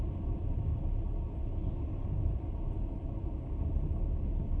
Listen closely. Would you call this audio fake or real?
real